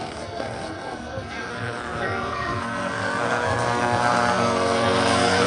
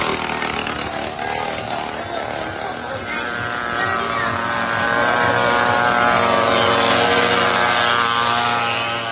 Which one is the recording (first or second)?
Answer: second